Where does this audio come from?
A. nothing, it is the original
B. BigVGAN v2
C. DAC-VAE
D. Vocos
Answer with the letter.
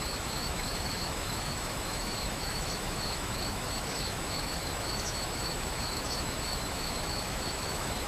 C